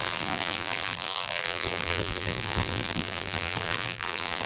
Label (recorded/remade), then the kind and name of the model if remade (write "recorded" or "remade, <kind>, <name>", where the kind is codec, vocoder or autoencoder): remade, vocoder, BigVGAN v2